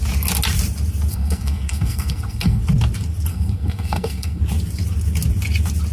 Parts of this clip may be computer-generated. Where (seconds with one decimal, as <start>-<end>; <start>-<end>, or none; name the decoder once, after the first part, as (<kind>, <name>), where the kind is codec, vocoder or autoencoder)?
1.1-2.6 (codec, SNAC); 3.3-4.4